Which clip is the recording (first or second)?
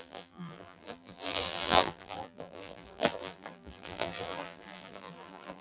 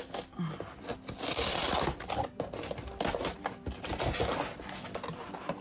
second